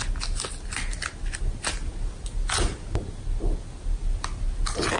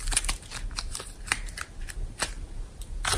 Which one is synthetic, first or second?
second